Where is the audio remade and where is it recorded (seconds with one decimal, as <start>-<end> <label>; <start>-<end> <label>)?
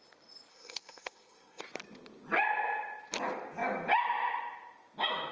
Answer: 0.0-0.5 recorded; 0.5-1.6 remade; 1.6-5.3 recorded